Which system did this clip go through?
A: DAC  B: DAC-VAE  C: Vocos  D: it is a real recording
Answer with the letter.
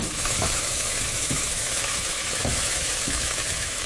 B